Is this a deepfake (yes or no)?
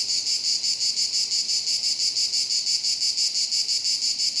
no